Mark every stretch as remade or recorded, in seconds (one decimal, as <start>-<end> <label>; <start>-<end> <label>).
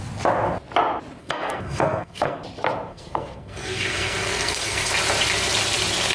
0.0-1.2 recorded; 1.2-2.4 remade; 2.4-2.9 recorded; 2.9-4.9 remade; 4.9-6.1 recorded